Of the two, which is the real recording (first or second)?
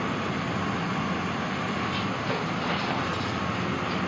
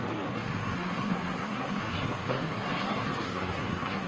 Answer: first